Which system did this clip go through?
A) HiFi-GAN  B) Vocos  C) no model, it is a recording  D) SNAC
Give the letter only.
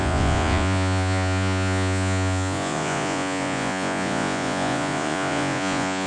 B